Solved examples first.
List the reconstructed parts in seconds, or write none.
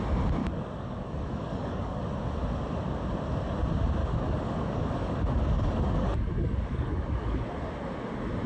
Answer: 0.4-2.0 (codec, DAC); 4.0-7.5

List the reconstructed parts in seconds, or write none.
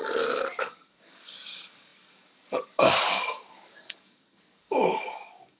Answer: 0.6-5.6 (codec, DAC)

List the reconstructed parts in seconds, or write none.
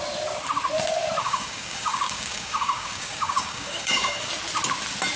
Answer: 1.2-4.3 (codec, DAC)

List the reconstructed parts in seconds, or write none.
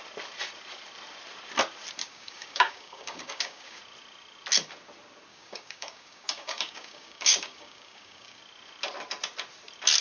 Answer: 2.0-3.8 (codec, DAC); 5.3-8.4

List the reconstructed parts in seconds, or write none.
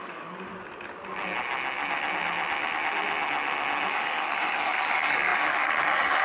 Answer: 0.0-0.5 (codec, DAC); 3.9-6.2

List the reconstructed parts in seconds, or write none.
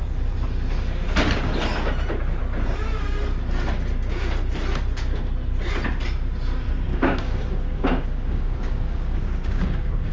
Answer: 6.9-10.1 (codec, DAC)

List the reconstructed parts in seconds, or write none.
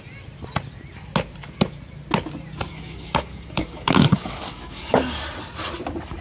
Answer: 2.7-5.2 (codec, DAC)